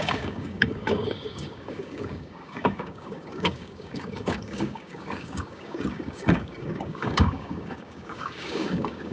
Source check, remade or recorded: remade